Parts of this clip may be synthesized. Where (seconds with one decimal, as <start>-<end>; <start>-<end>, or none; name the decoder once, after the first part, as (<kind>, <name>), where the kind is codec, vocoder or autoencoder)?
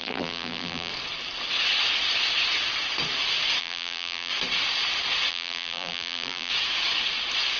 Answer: 0.0-0.9 (vocoder, BigVGAN v2); 3.6-4.3; 5.3-6.5